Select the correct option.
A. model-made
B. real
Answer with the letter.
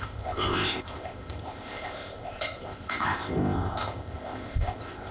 A